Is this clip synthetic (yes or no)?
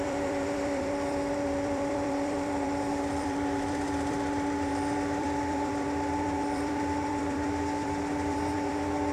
yes